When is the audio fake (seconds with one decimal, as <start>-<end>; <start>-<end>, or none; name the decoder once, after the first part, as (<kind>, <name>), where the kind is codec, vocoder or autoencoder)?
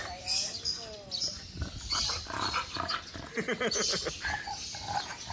none